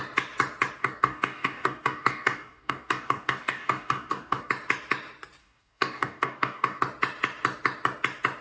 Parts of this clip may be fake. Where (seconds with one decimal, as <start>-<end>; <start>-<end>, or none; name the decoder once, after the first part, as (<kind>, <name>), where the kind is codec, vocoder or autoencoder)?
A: 0.8-4.5 (codec, DAC); 5.4-6.8